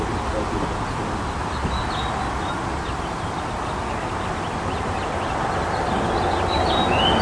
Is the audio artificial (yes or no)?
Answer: no